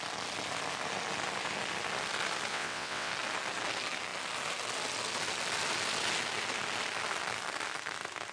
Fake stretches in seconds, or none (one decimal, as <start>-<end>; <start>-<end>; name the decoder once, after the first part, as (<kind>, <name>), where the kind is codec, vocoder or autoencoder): 2.5-3.1 (vocoder, WaveNeXt)